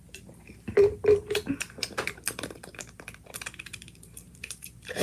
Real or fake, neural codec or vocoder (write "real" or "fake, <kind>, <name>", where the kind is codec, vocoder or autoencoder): fake, vocoder, BigVGAN v2